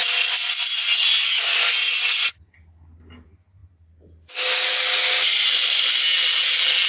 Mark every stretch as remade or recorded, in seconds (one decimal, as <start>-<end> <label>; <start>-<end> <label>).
0.0-6.9 recorded